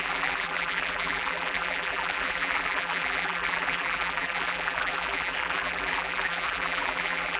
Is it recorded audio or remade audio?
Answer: remade